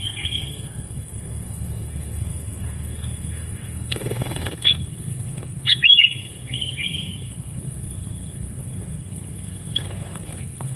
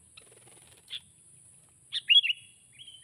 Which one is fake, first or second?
first